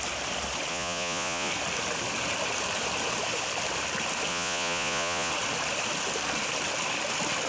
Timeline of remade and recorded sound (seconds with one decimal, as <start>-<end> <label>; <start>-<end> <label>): 0.0-0.7 recorded; 0.7-1.5 remade; 1.5-4.3 recorded; 4.3-5.3 remade; 5.3-7.5 recorded